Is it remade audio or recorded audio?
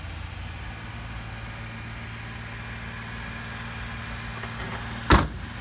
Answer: recorded